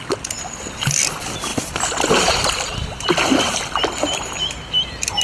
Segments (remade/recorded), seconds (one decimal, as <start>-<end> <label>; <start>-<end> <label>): 0.0-5.2 recorded